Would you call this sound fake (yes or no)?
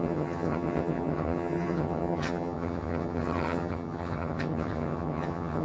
yes